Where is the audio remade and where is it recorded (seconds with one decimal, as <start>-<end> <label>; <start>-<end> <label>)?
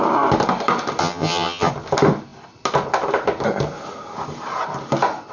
0.0-1.0 recorded; 1.0-1.7 remade; 1.7-5.3 recorded